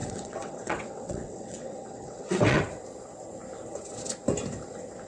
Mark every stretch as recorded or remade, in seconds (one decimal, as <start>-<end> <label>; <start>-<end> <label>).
0.0-2.6 remade; 2.6-5.1 recorded